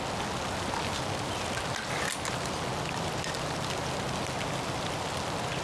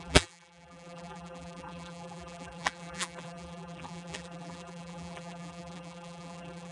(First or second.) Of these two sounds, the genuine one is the first